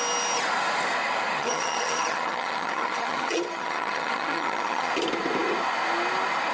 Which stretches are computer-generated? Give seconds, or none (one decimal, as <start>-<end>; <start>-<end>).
1.4-4.9